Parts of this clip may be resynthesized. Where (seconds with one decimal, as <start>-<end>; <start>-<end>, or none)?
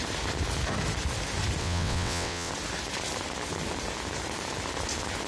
1.6-2.5